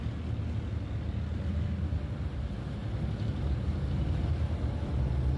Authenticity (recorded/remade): recorded